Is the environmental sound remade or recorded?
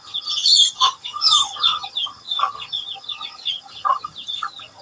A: remade